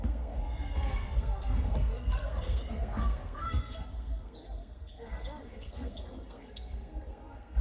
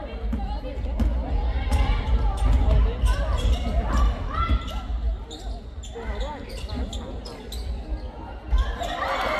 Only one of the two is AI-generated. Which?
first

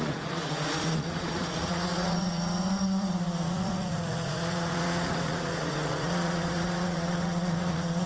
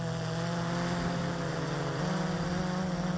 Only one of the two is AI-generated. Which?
first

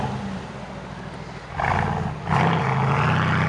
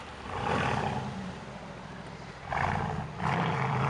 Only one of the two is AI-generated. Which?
second